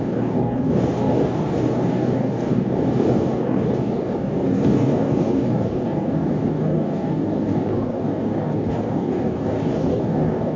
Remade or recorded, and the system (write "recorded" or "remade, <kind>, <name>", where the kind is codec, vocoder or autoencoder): remade, codec, DAC